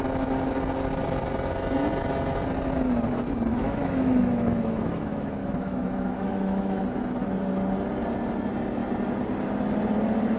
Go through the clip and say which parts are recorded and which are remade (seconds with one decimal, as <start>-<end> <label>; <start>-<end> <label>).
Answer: 0.0-3.5 recorded; 3.5-6.8 remade; 6.8-10.4 recorded